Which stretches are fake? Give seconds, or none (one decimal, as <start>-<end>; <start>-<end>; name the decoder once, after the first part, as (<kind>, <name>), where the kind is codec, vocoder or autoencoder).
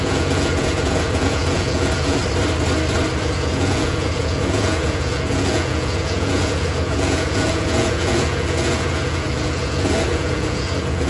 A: 0.0-2.2 (vocoder, Vocos); 3.2-11.1